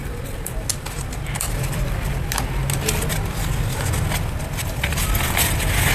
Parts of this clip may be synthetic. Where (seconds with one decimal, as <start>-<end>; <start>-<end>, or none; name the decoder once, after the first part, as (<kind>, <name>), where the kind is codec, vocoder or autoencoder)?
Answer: 0.7-2.4 (vocoder, BigVGAN v2)